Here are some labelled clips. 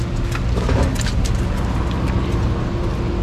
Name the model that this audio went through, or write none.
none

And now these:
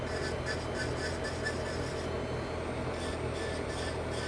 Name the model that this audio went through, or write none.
none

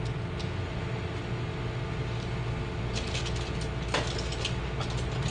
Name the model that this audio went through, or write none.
none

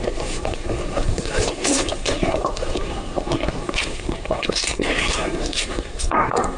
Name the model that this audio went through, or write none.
codec, SNAC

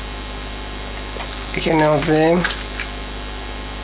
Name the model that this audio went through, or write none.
none